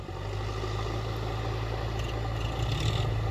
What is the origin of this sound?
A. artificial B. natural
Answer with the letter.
B